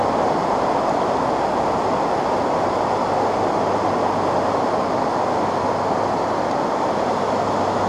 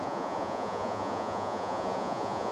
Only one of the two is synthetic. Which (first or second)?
second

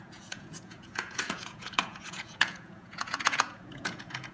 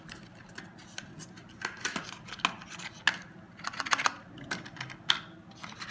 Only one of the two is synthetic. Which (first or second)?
first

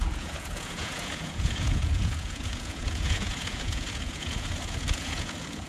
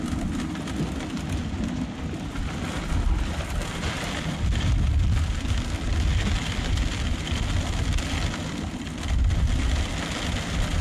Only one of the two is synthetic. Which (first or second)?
first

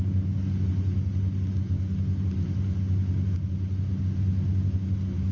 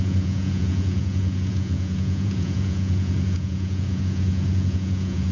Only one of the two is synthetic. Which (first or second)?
second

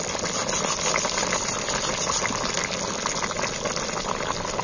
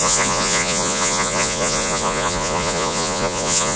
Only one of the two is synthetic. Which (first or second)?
second